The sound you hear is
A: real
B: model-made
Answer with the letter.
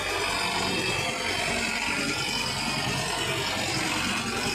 A